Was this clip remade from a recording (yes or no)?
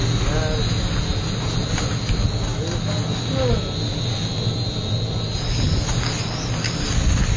no